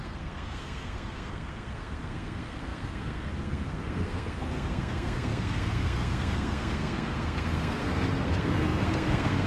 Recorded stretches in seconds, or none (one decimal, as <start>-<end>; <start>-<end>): none